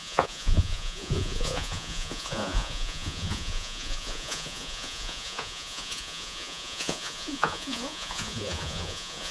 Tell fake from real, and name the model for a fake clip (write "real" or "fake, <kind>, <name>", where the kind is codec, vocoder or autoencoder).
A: fake, vocoder, Vocos